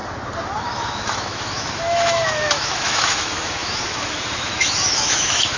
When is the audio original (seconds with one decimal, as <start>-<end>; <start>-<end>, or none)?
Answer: 0.0-0.6